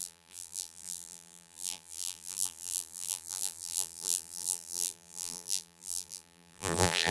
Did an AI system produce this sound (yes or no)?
yes